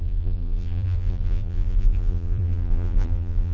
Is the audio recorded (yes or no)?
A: no